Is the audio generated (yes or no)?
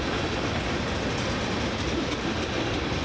no